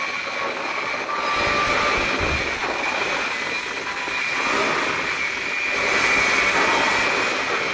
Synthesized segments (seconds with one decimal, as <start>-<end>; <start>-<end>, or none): none